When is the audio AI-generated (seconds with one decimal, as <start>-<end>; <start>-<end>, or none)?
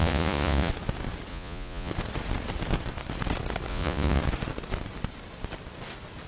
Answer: 0.0-0.7; 1.3-1.9; 3.7-4.2